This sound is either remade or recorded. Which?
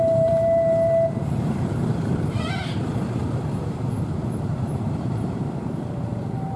remade